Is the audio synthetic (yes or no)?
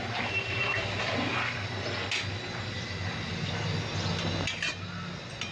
no